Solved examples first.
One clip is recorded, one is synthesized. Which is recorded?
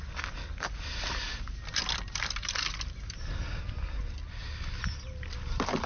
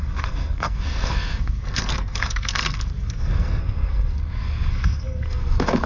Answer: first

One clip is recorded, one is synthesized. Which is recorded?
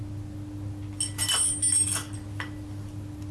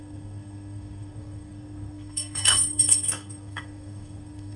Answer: first